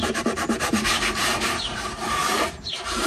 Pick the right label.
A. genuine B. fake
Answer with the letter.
B